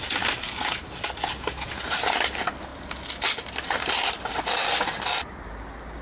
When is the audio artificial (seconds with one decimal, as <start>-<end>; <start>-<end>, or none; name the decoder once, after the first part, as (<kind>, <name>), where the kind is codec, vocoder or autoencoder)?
none